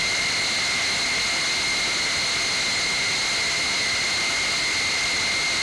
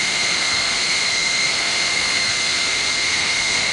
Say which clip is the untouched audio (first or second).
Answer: first